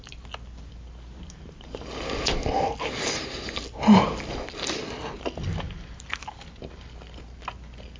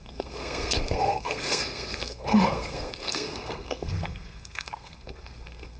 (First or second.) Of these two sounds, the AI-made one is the second